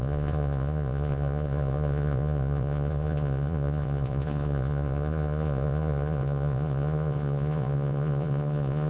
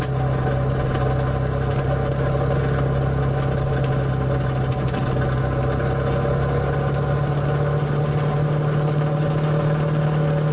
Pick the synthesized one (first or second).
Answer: first